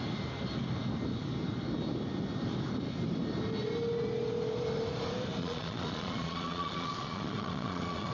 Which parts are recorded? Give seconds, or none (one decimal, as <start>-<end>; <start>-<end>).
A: 0.0-5.4